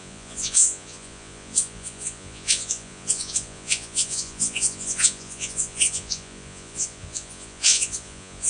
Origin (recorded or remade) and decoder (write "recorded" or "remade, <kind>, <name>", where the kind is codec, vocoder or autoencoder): remade, vocoder, Vocos